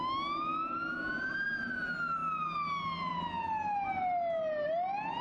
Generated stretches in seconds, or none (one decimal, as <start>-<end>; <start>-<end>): none